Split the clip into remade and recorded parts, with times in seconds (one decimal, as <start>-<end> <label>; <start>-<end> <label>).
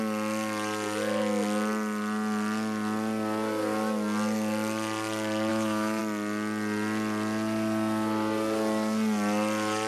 0.0-5.5 recorded; 5.5-6.0 remade; 6.0-9.9 recorded